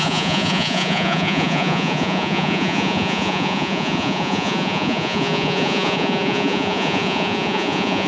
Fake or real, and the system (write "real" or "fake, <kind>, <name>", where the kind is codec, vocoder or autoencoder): fake, vocoder, Vocos